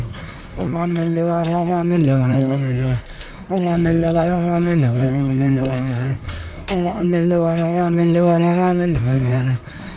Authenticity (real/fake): fake